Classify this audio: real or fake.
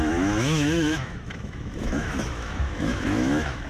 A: fake